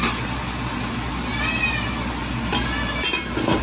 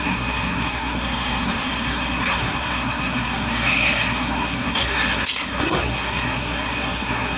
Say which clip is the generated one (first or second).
second